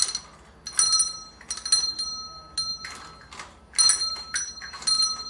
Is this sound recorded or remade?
recorded